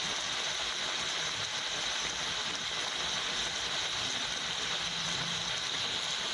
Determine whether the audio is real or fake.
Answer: real